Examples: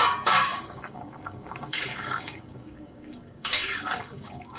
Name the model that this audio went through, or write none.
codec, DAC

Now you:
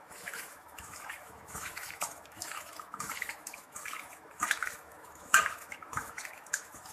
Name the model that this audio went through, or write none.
autoencoder, DAC-VAE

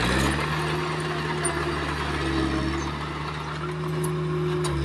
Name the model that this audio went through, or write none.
none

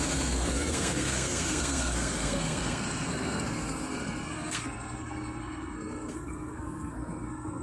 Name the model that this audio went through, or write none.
codec, SNAC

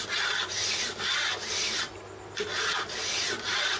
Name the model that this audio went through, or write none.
none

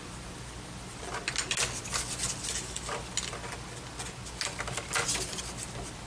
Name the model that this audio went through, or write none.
none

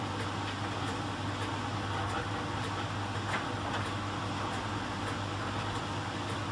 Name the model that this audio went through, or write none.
none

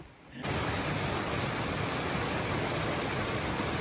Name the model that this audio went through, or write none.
none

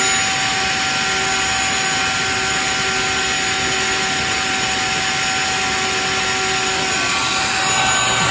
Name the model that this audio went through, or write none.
none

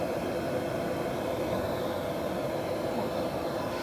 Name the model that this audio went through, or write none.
none